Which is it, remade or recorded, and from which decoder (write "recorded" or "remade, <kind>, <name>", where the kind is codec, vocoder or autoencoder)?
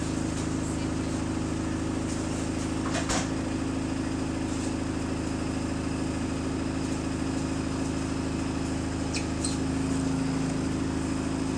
recorded